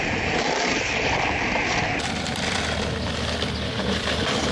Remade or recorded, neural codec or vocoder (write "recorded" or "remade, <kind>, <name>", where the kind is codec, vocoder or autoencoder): remade, vocoder, BigVGAN v2